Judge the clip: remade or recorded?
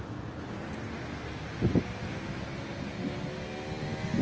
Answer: recorded